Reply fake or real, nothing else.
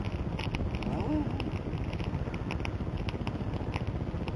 real